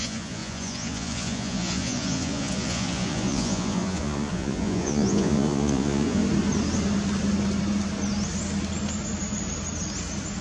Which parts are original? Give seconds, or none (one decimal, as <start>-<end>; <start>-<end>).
6.2-10.4